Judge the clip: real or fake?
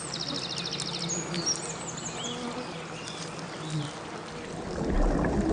real